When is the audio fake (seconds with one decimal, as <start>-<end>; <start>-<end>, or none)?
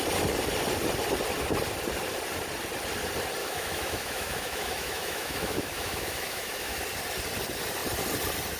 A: 3.4-6.8